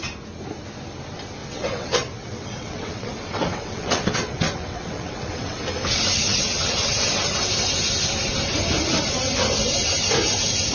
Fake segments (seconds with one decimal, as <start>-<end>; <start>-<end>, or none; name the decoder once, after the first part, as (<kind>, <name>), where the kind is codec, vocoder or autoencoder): 1.4-5.6 (vocoder, WaveNeXt); 6.1-7.1